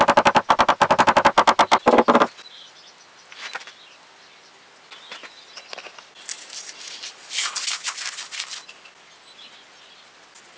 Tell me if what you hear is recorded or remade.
recorded